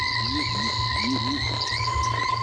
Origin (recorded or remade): recorded